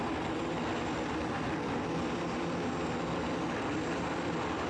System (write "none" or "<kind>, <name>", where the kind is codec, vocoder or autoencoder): none